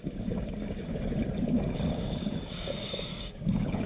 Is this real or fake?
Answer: fake